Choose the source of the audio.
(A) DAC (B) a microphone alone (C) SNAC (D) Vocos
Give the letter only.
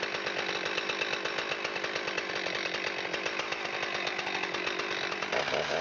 B